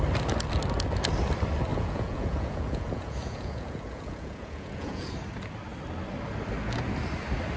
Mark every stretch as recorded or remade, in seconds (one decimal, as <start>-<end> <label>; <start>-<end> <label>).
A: 0.0-1.7 recorded; 1.7-5.1 remade; 5.1-7.6 recorded